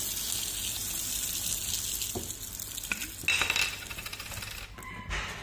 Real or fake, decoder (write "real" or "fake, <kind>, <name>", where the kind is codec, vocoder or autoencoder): real